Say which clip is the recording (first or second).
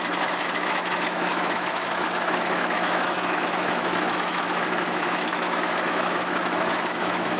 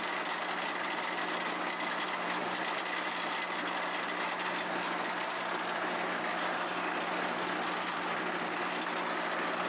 second